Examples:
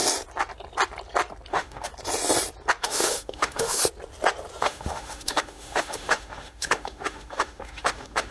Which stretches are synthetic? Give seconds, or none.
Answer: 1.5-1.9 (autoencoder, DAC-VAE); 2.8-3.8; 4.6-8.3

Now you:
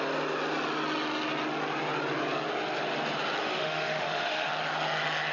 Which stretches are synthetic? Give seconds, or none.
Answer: 3.4-4.5 (autoencoder, DAC-VAE)

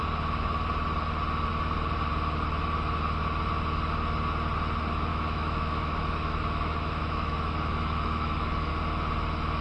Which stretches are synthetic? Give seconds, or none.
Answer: 5.1-8.7 (autoencoder, DAC-VAE)

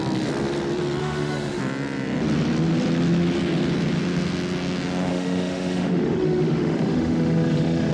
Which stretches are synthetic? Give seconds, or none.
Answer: 1.0-1.6 (autoencoder, DAC-VAE); 5.1-7.9

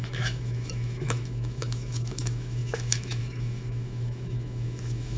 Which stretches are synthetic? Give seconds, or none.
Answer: 0.0-5.2 (autoencoder, DAC-VAE)